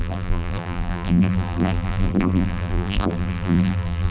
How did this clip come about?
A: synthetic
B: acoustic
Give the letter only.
A